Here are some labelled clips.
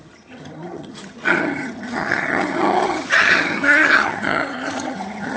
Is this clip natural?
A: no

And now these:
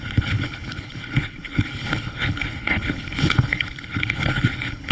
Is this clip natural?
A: no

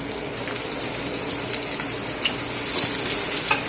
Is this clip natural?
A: yes